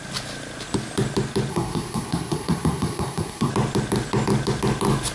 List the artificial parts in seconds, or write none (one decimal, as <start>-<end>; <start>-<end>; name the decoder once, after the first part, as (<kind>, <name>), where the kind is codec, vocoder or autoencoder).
1.5-3.5 (codec, SNAC)